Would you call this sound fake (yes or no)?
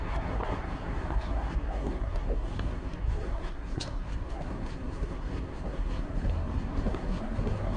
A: yes